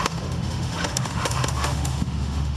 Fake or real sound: fake